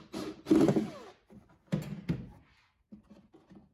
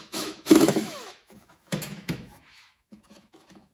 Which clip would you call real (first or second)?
first